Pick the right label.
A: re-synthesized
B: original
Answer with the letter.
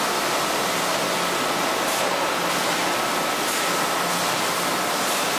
B